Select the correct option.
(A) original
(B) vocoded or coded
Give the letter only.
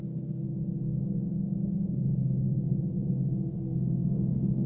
B